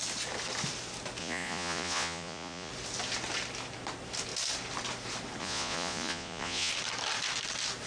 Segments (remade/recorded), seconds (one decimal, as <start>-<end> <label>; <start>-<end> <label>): 0.0-1.2 recorded; 1.2-2.7 remade; 2.7-5.4 recorded; 5.4-6.7 remade; 6.7-7.9 recorded